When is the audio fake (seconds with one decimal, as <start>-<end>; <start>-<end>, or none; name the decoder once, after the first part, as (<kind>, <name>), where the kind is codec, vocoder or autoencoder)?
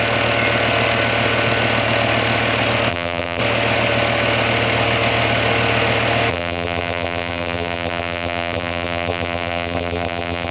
2.9-3.4 (vocoder, BigVGAN v2); 6.3-10.5